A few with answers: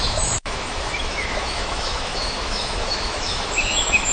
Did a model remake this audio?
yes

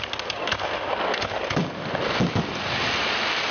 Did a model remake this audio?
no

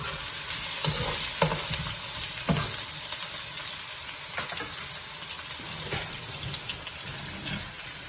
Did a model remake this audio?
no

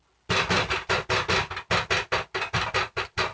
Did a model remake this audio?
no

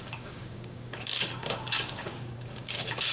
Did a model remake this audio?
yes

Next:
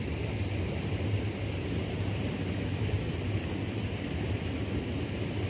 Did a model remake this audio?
no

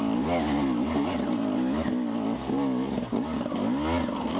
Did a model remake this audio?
no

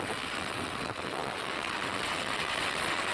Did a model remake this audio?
yes